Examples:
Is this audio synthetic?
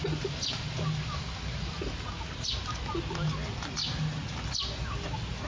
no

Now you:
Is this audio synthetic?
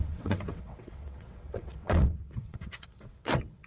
yes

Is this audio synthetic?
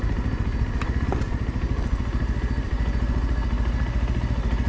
no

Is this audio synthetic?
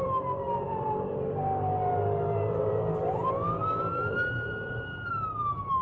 yes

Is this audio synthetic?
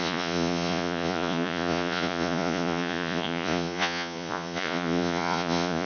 yes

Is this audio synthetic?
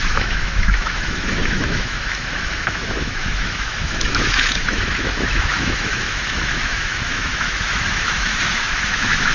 yes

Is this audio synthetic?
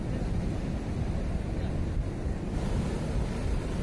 no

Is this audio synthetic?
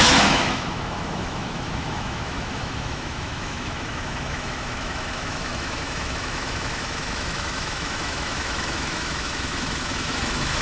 yes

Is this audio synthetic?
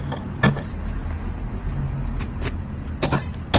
no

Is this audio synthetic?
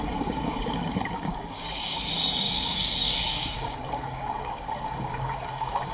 yes